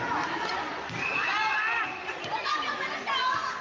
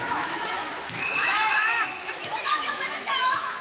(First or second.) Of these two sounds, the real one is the first